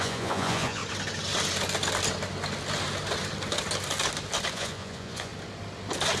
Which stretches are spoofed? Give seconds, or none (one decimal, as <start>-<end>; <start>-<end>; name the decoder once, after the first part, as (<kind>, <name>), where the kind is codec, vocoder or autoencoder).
0.0-0.8 (vocoder, Vocos); 4.5-5.3

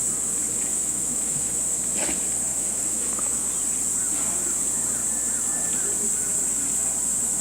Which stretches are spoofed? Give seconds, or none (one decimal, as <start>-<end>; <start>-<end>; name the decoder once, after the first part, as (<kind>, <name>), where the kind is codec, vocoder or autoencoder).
0.7-1.8 (autoencoder, DAC-VAE); 2.5-3.5

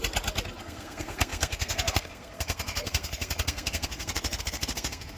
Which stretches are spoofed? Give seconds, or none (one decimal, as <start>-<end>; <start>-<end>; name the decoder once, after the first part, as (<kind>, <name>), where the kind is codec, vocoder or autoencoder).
0.6-5.2 (codec, SNAC)

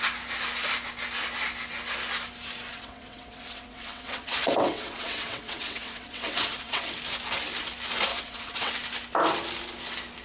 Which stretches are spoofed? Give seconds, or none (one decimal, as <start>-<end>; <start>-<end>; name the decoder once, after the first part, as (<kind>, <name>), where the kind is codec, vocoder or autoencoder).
2.7-6.9 (vocoder, WaveNeXt); 8.1-8.7

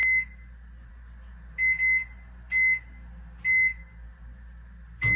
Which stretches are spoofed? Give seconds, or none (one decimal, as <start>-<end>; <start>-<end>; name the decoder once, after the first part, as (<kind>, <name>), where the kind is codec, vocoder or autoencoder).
none

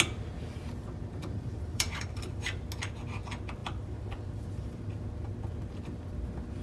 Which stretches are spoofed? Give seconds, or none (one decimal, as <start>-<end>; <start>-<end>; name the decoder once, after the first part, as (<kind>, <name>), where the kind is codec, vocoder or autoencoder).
1.2-2.6 (vocoder, BigVGAN v2); 3.6-4.5